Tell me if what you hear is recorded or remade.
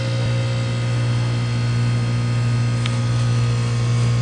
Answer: recorded